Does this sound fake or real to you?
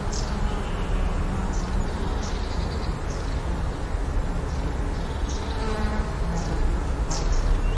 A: real